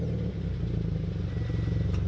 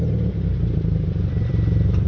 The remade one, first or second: second